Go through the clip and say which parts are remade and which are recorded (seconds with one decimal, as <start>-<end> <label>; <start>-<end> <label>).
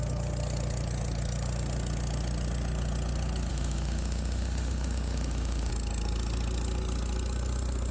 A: 0.0-3.5 recorded; 3.5-5.7 remade; 5.7-7.9 recorded